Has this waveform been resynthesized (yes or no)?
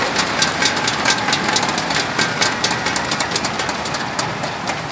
no